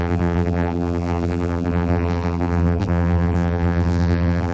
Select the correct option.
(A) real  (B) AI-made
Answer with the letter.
B